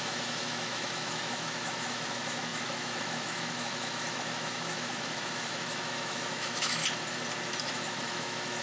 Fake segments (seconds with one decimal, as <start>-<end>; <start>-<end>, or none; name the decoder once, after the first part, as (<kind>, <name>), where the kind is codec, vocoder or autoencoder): 0.0-6.8 (autoencoder, DAC-VAE); 7.6-8.6